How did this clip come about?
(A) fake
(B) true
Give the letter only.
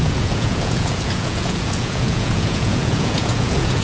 A